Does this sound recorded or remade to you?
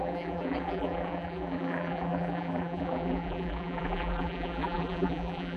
remade